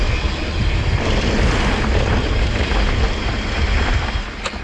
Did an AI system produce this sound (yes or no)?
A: no